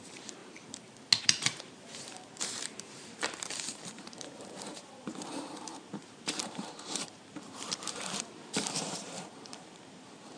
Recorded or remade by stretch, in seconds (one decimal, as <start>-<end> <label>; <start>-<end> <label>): 0.0-0.4 remade; 0.4-1.2 recorded; 1.2-10.4 remade